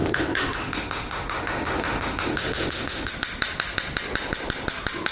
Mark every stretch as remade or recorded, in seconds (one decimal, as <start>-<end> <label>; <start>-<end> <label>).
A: 0.0-3.1 remade; 3.1-5.1 recorded